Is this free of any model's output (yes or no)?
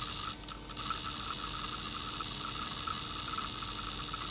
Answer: yes